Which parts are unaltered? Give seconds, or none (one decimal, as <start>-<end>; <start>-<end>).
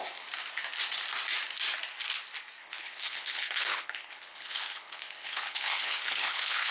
0.0-2.6